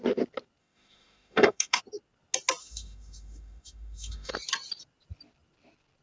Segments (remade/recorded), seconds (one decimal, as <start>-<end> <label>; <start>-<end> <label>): 0.0-0.6 recorded; 0.6-1.8 remade; 1.8-2.6 recorded; 2.6-4.3 remade; 4.3-6.0 recorded